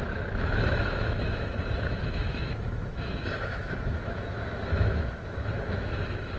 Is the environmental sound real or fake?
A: fake